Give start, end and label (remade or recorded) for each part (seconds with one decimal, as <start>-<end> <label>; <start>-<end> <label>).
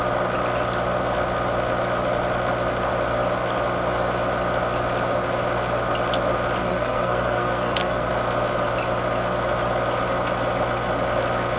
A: 0.0-6.6 recorded; 6.6-8.1 remade; 8.1-11.6 recorded